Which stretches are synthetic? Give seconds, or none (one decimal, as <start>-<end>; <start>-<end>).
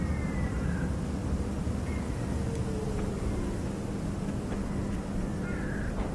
none